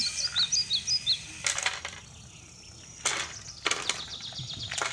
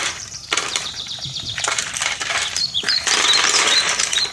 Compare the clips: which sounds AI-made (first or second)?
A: second